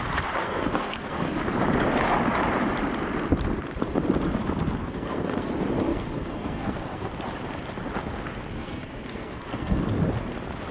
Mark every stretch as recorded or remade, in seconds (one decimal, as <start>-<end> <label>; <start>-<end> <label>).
0.0-0.4 recorded; 0.4-1.2 remade; 1.2-4.8 recorded; 4.8-5.5 remade; 5.5-5.9 recorded; 5.9-7.1 remade; 7.1-8.6 recorded; 8.6-9.8 remade; 9.8-10.7 recorded